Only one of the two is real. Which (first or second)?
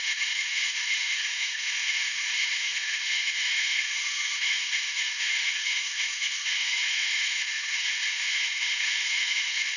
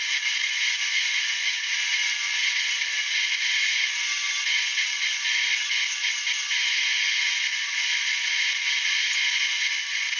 second